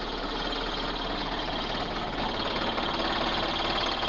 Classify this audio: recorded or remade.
recorded